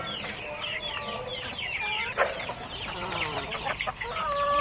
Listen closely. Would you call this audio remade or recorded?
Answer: recorded